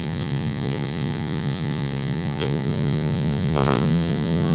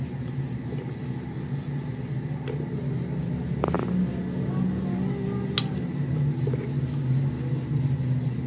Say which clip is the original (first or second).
second